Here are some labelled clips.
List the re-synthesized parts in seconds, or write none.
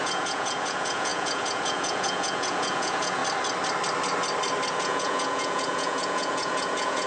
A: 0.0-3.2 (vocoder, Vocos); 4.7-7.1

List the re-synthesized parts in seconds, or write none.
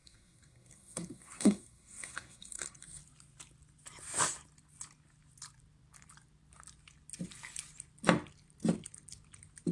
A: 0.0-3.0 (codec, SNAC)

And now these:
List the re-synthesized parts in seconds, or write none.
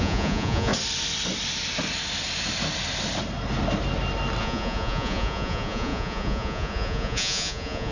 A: 0.0-0.7 (vocoder, Vocos); 4.4-7.9